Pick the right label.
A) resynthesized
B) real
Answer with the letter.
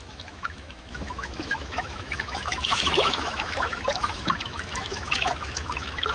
A